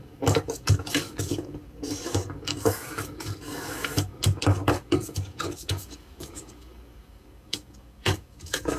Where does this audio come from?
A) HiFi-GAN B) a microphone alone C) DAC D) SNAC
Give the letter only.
C